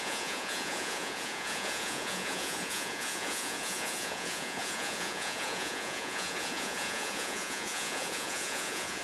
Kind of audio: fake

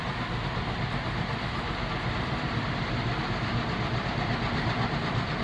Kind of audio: fake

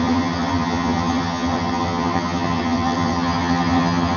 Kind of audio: fake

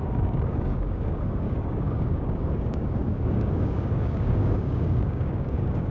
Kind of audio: fake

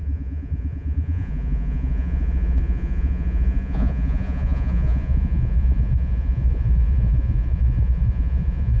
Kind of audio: fake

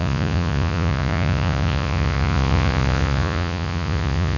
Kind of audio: fake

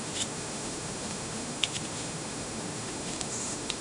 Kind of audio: fake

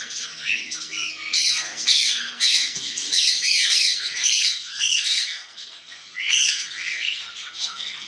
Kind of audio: fake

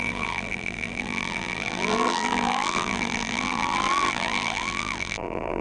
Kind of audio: fake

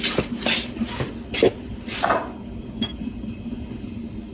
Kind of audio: real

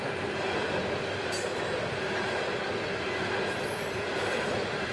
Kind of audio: real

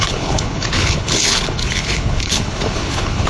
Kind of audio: fake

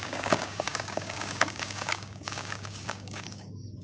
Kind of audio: fake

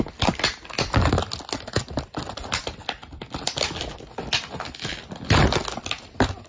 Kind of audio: real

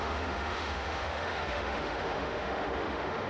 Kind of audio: fake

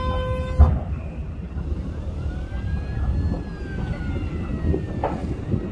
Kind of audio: real